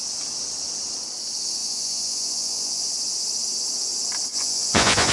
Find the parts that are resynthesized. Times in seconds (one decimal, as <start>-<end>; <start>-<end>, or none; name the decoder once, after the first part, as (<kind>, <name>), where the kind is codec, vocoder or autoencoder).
1.6-2.9 (vocoder, Vocos); 4.3-5.1